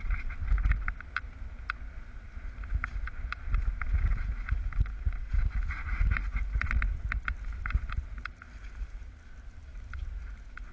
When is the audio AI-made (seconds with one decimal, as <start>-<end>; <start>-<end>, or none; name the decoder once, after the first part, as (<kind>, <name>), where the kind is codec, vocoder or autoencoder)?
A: none